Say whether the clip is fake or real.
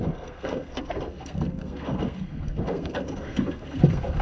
fake